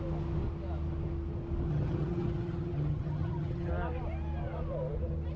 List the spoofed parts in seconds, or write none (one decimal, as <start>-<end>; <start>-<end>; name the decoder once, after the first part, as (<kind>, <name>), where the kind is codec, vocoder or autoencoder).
1.7-3.7 (vocoder, HiFi-GAN)